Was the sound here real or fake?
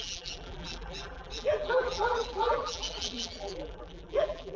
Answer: fake